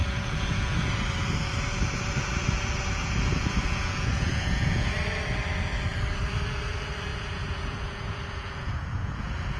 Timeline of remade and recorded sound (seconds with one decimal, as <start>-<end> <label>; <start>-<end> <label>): 0.0-0.7 remade; 0.7-3.0 recorded; 3.0-4.9 remade; 4.9-7.1 recorded; 7.1-9.6 remade